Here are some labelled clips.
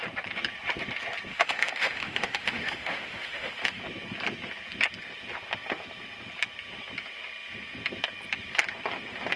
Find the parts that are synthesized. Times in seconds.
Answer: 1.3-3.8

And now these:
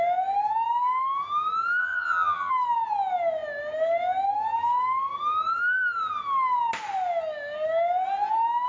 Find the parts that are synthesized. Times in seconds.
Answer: 1.8-2.5